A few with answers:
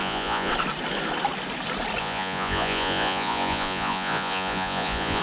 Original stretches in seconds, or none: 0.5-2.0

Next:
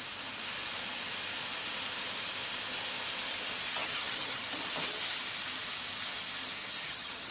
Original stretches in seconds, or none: 0.0-3.8; 4.4-6.6

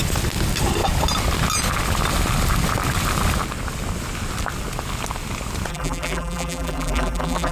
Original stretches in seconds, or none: 0.0-5.7

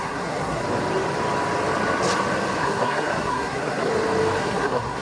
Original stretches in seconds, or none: 0.6-2.6; 3.9-4.4